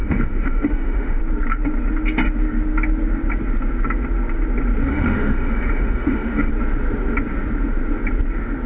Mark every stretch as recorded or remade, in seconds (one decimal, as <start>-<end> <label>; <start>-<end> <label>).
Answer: 0.0-1.2 remade; 1.2-4.9 recorded; 4.9-6.5 remade; 6.5-8.7 recorded